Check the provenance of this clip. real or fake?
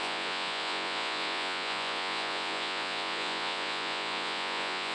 fake